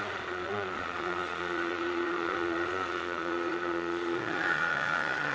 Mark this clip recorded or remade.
remade